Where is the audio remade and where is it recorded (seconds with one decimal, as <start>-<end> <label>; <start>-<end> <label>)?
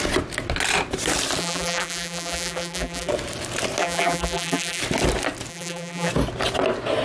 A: 0.0-1.4 recorded; 1.4-3.1 remade; 3.1-3.8 recorded; 3.8-4.8 remade; 4.8-5.5 recorded; 5.5-6.1 remade; 6.1-7.0 recorded